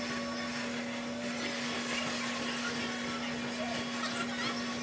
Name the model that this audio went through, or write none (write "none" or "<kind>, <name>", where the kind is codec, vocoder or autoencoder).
none